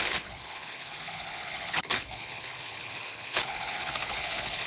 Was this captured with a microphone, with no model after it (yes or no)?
no